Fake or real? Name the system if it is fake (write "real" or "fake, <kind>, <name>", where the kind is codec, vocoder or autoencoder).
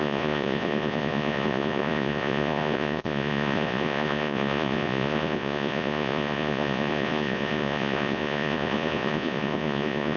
fake, vocoder, Vocos